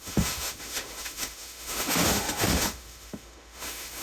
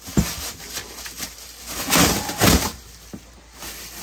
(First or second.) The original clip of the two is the second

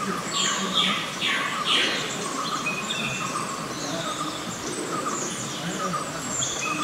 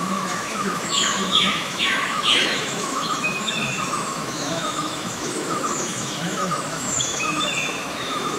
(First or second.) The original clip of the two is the first